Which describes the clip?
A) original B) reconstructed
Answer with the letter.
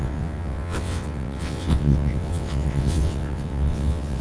B